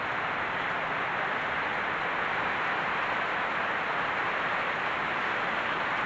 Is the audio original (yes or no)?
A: yes